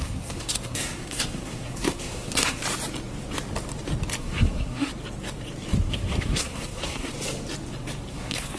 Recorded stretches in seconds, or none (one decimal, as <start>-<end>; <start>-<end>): 2.6-4.2; 4.9-5.9; 7.1-8.1